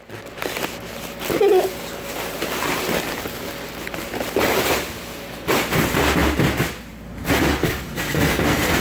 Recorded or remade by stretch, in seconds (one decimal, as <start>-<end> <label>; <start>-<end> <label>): 0.0-7.6 recorded; 7.6-8.8 remade